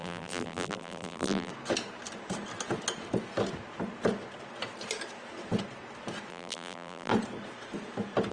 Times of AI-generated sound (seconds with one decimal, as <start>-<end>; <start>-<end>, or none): 0.0-1.5; 6.3-7.1